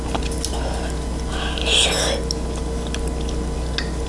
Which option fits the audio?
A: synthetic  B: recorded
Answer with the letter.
B